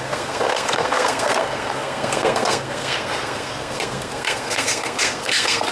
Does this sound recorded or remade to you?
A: remade